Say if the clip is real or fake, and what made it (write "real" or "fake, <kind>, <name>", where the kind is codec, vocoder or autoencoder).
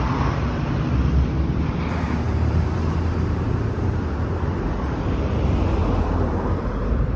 fake, vocoder, BigVGAN v2